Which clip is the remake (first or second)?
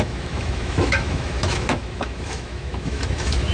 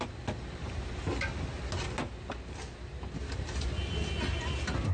first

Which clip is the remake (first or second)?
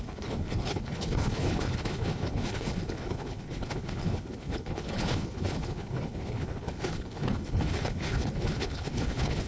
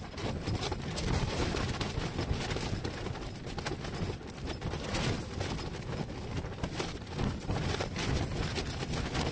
first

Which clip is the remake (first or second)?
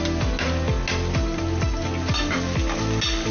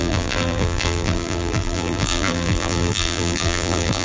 second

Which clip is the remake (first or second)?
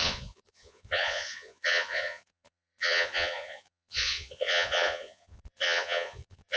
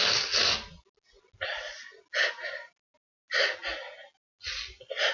first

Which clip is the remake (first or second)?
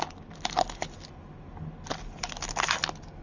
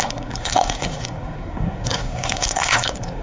second